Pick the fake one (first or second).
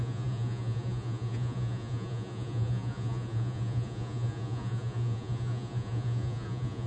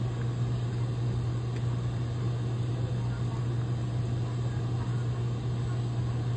first